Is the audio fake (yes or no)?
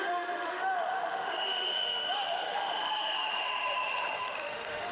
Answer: yes